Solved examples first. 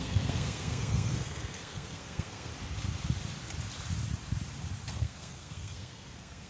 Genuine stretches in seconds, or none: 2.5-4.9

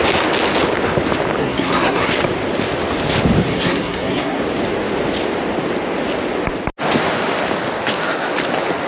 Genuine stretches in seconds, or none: 0.0-1.4; 2.1-3.5; 4.4-8.9

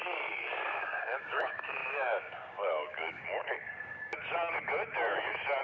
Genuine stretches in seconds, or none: 4.1-5.6

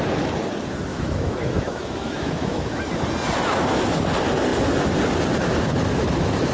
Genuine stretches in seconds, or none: 0.0-0.9; 2.8-6.5